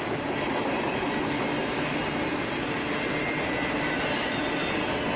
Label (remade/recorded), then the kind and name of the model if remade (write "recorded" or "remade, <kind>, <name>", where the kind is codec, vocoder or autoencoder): recorded